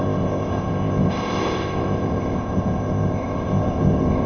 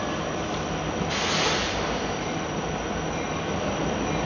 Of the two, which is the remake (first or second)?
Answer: first